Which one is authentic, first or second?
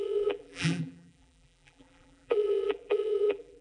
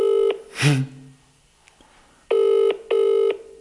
second